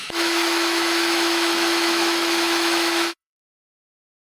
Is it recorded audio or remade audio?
remade